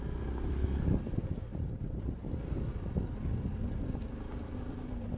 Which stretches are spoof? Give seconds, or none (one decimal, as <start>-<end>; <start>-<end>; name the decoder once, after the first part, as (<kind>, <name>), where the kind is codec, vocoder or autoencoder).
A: none